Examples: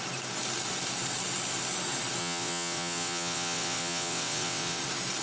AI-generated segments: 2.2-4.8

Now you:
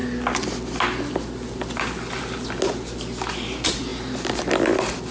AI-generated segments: none

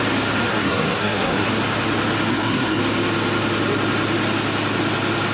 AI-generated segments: 0.5-1.5; 2.3-2.8

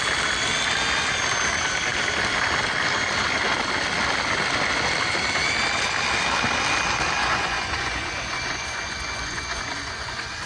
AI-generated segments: 7.2-10.5

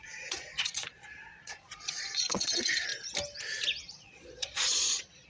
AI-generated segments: 0.0-2.9; 3.9-5.3

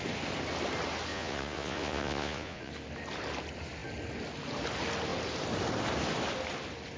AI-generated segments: 1.1-2.7

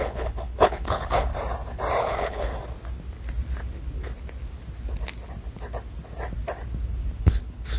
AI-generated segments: 0.0-1.3; 2.0-2.5; 7.2-7.8

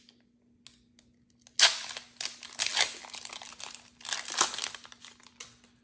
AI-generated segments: none